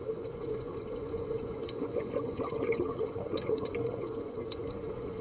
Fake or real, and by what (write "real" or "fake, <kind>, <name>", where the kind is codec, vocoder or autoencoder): fake, vocoder, Vocos